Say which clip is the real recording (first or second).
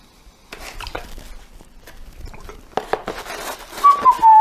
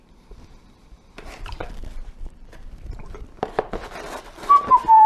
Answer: first